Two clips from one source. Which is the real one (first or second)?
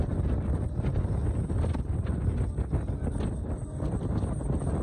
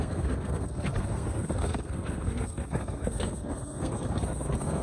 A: first